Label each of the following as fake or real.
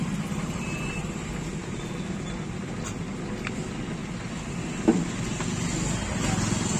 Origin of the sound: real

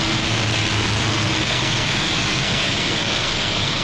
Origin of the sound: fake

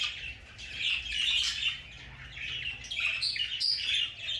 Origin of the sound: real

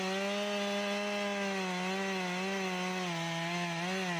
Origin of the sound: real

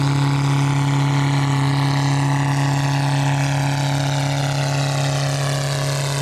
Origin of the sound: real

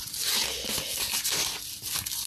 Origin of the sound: real